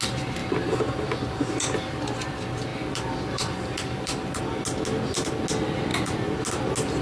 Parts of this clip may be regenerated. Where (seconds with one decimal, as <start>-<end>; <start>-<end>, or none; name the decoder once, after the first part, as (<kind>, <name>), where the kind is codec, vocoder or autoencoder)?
2.7-4.4 (vocoder, BigVGAN v2)